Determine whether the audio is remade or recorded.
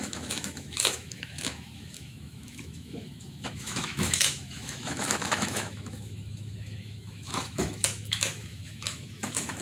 remade